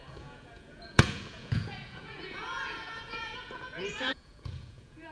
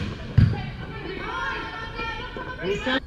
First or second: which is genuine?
second